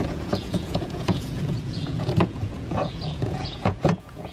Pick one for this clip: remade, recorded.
remade